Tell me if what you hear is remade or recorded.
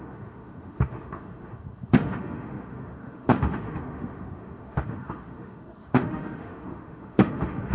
remade